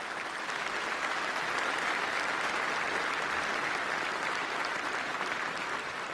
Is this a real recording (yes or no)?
yes